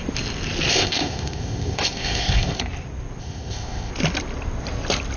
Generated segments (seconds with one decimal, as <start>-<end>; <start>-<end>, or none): 0.7-2.6; 3.2-3.9